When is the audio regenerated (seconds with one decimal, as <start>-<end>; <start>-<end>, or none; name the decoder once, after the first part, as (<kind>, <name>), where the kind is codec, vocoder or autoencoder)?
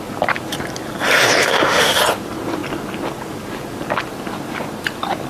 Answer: 1.4-2.0 (autoencoder, DAC-VAE)